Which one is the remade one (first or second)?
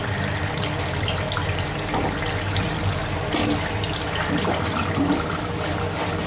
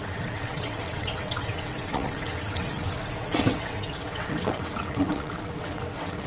second